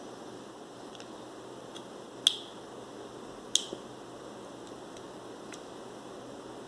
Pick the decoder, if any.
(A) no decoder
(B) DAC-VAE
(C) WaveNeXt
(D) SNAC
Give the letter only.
A